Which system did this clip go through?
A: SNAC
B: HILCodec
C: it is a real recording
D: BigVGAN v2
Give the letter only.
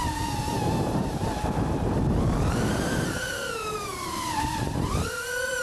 D